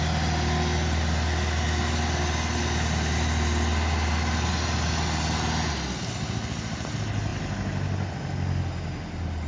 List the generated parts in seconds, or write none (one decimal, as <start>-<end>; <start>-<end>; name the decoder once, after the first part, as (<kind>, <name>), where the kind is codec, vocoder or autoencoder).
none